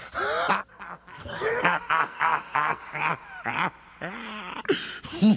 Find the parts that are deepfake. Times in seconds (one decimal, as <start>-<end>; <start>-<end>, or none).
0.7-2.8